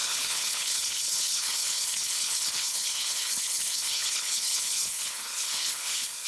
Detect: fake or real fake